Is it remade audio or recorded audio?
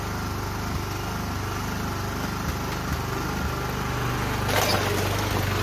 recorded